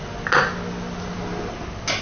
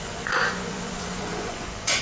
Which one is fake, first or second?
second